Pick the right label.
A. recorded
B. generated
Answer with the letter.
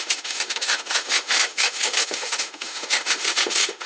B